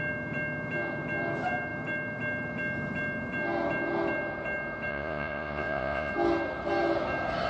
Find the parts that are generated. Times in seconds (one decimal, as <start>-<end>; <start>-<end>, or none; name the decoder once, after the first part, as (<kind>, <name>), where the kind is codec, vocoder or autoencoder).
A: 4.9-6.1 (vocoder, Vocos)